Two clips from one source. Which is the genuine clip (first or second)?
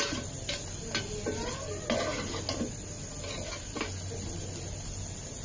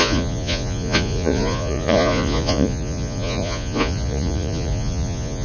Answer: first